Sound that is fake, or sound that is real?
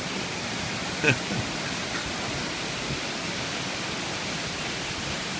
real